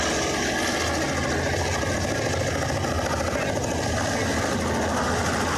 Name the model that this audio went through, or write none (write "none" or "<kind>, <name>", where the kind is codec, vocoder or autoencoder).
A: none